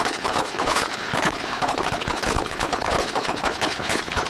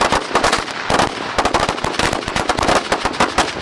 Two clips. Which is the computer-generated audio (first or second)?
first